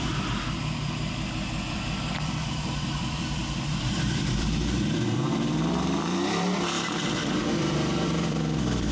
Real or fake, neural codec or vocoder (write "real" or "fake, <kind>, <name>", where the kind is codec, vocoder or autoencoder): fake, vocoder, BigVGAN v2